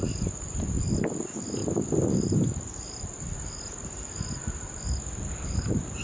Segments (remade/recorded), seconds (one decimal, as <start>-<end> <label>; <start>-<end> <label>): 0.0-6.0 recorded